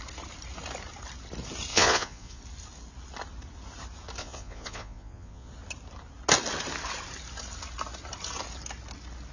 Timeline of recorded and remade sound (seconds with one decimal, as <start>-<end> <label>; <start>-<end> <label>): 0.0-1.7 recorded; 1.7-2.4 remade; 2.4-4.2 recorded; 4.2-5.5 remade; 5.5-9.3 recorded